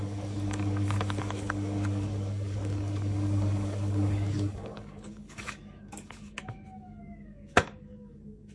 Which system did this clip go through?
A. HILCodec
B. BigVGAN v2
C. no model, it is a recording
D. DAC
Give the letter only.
D